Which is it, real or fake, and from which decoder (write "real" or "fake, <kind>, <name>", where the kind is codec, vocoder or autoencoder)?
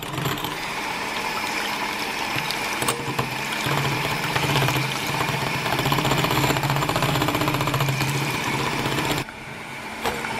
fake, vocoder, BigVGAN v2